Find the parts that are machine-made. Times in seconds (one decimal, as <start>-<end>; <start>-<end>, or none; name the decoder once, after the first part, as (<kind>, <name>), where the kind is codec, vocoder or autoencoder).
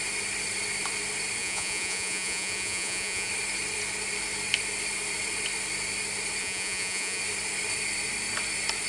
1.4-3.3 (vocoder, Vocos); 6.4-7.2